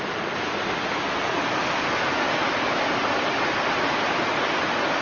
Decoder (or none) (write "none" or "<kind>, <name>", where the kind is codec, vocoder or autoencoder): none